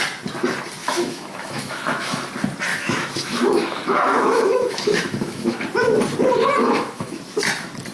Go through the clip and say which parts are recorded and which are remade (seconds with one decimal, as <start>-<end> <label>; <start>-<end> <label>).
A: 0.0-0.8 recorded; 0.8-2.2 remade; 2.2-2.7 recorded; 2.7-5.6 remade; 5.6-6.6 recorded; 6.6-7.2 remade; 7.2-7.9 recorded